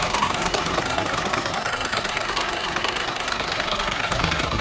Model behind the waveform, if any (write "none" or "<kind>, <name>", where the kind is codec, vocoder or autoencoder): codec, SNAC